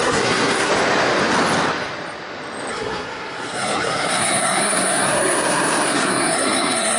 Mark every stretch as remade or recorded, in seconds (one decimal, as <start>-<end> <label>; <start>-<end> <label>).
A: 0.0-0.7 remade; 0.7-2.7 recorded; 2.7-7.0 remade